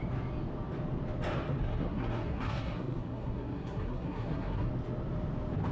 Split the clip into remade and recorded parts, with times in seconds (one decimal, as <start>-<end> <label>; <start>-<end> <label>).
0.0-1.7 recorded; 1.7-4.7 remade; 4.7-5.7 recorded